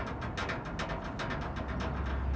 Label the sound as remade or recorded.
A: recorded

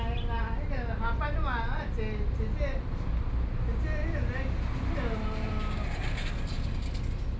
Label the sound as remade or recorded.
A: recorded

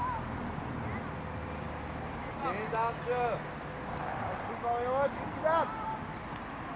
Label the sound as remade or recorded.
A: recorded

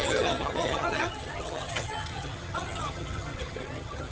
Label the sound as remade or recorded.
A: remade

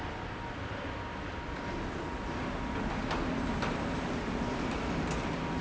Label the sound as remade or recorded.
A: recorded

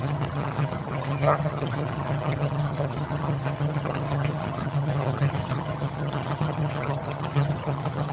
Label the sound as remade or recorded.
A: remade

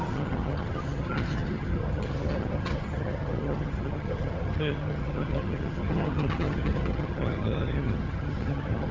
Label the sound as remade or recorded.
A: remade